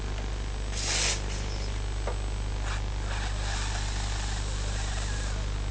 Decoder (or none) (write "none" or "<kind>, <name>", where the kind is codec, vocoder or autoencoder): none